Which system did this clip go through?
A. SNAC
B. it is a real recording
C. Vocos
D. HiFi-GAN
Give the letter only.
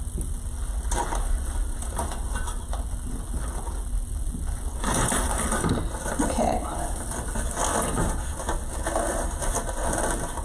B